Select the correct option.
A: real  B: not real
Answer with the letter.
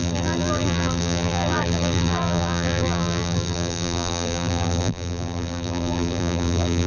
B